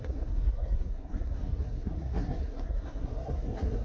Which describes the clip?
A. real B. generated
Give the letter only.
B